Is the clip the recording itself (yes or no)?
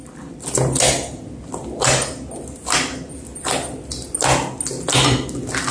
yes